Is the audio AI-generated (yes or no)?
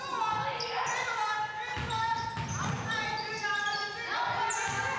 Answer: no